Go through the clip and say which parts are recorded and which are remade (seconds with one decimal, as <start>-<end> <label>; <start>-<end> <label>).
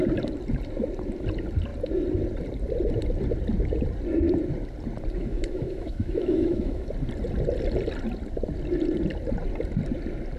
0.0-5.2 recorded; 5.2-6.9 remade; 6.9-10.4 recorded